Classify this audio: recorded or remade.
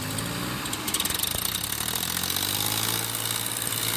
recorded